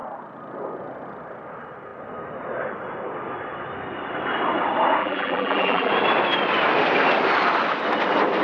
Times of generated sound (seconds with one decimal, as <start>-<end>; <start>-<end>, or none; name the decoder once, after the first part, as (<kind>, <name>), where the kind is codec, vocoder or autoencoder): 5.0-5.9 (vocoder, BigVGAN v2)

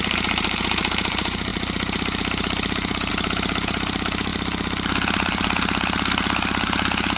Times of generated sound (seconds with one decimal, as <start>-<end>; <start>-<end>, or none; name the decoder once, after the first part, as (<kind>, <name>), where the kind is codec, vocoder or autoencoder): 0.0-4.3 (vocoder, BigVGAN v2)

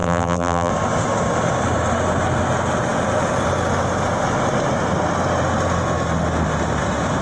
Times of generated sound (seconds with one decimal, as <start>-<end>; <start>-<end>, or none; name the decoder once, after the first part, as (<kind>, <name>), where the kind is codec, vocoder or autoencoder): 0.0-0.7 (vocoder, BigVGAN v2)

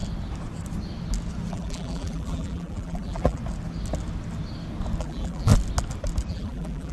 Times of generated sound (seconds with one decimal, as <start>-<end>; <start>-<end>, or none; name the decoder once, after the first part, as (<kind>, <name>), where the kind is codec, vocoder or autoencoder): 1.5-3.4 (vocoder, BigVGAN v2); 5.0-5.5; 6.3-6.9

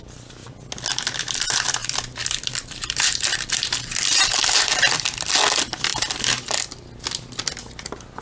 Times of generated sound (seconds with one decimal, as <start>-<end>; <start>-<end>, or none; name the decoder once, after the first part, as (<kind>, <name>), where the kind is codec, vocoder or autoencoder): 1.8-5.0 (vocoder, BigVGAN v2)

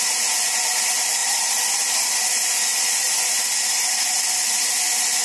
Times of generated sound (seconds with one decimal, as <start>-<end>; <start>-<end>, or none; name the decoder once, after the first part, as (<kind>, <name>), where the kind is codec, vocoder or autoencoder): 1.2-2.0 (vocoder, BigVGAN v2)

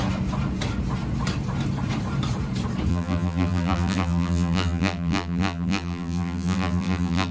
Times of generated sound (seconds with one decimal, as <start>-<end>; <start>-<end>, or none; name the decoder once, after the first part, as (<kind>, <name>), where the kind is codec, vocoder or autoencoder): 2.9-7.3 (vocoder, BigVGAN v2)

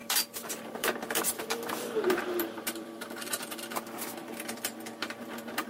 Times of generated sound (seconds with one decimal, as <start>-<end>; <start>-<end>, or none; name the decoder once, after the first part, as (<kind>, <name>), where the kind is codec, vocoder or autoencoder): 0.0-3.4 (vocoder, BigVGAN v2); 4.2-4.7